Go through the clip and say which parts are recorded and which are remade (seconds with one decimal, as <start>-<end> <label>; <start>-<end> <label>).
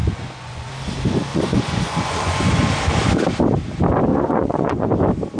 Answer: 0.0-0.7 remade; 0.7-1.3 recorded; 1.3-2.7 remade; 2.7-4.1 recorded; 4.1-4.9 remade; 4.9-5.4 recorded